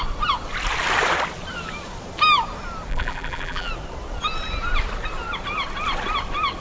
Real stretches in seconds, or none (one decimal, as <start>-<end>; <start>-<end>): 0.0-2.9; 3.7-6.6